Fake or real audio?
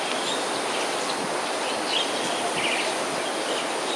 real